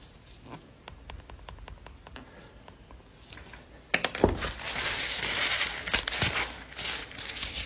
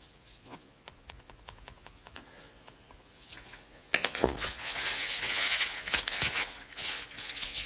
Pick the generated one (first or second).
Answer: second